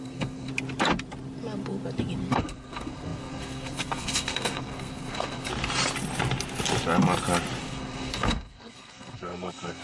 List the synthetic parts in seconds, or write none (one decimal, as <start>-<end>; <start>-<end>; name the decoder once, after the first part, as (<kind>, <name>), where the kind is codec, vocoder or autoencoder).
0.0-0.5 (codec, SNAC); 2.3-5.5; 7.6-9.8